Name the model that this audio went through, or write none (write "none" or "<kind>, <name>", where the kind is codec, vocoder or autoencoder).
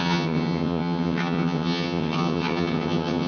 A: vocoder, HiFi-GAN